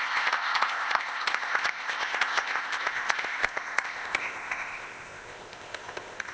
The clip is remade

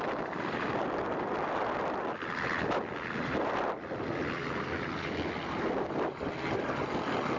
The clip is recorded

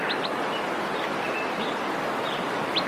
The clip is recorded